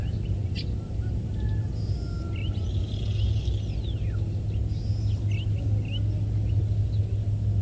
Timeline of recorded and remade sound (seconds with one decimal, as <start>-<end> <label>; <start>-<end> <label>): 0.0-7.6 recorded